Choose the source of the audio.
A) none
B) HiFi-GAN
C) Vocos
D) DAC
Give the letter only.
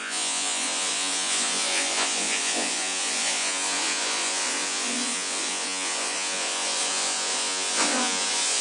C